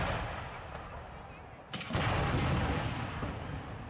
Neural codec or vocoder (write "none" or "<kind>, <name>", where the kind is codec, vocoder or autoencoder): none